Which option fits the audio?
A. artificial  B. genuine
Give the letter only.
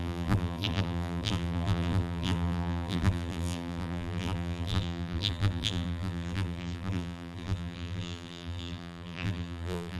A